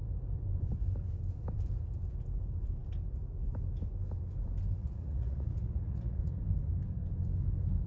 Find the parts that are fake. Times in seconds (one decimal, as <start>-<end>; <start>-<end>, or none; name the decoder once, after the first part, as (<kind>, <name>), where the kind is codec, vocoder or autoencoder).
4.8-6.3 (vocoder, Vocos)